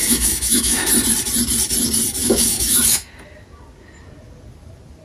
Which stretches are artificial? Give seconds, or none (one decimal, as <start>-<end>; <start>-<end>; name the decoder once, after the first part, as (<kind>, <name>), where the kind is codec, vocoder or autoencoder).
0.0-0.9 (autoencoder, DAC-VAE); 2.2-3.1